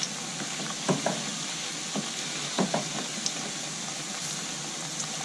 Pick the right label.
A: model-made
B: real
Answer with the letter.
B